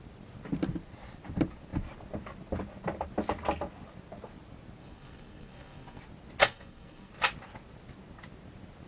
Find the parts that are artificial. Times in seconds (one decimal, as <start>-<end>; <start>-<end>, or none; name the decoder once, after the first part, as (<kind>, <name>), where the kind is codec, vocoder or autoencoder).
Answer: 4.8-6.0 (codec, SNAC); 6.4-7.1